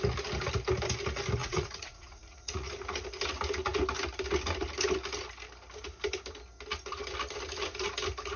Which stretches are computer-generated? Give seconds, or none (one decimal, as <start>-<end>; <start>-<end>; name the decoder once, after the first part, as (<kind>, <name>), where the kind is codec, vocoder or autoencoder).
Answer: 1.4-2.7 (vocoder, Vocos)